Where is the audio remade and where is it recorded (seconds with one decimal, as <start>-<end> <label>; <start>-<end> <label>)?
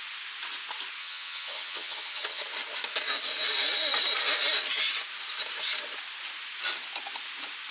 0.0-1.0 recorded; 1.0-2.4 remade; 2.4-7.7 recorded